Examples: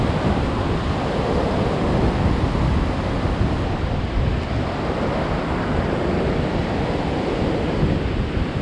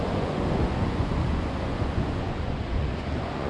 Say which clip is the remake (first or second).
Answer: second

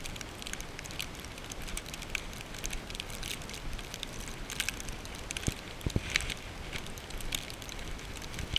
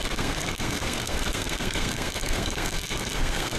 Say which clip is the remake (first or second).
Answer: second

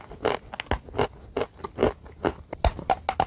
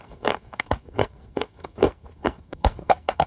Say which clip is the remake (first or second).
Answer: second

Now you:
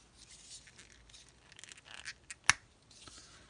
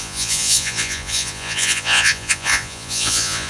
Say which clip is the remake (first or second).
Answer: second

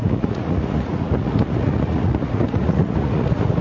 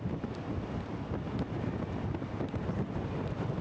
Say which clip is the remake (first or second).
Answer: first